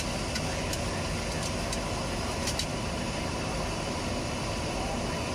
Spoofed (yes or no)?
no